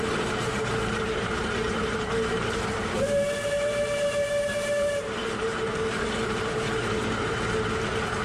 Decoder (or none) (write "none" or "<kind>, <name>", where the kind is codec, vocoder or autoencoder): vocoder, BigVGAN v2